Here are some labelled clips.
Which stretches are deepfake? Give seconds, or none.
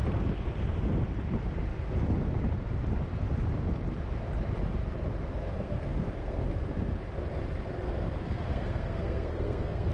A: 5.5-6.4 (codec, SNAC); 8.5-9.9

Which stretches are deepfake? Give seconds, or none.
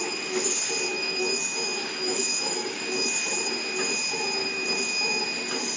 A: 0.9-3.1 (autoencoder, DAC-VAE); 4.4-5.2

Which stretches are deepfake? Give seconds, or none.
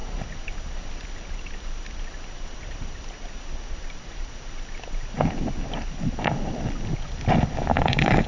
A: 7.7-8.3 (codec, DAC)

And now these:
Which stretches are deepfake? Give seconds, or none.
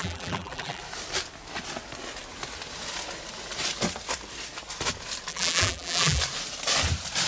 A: 0.0-0.8 (vocoder, BigVGAN v2); 5.3-6.2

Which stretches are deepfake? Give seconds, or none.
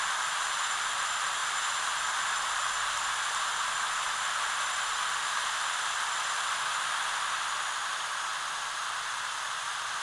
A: none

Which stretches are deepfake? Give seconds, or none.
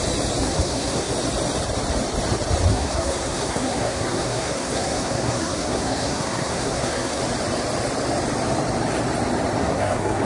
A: 0.4-1.1 (codec, SNAC); 2.7-7.2; 9.6-10.2